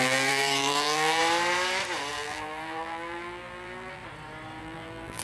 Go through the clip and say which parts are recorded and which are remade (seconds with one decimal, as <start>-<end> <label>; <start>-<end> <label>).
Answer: 0.0-1.2 remade; 1.2-2.1 recorded; 2.1-4.0 remade; 4.0-4.6 recorded; 4.6-5.2 remade